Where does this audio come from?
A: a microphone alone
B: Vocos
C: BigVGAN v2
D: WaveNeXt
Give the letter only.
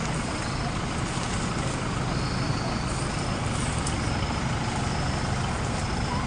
A